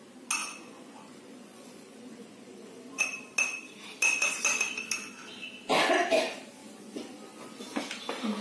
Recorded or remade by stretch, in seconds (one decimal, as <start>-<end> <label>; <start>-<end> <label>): 0.0-0.4 recorded; 0.4-3.0 remade; 3.0-6.6 recorded; 6.6-7.6 remade; 7.6-8.4 recorded